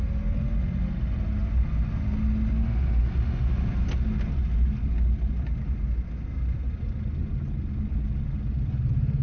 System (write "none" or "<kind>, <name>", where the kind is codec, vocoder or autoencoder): none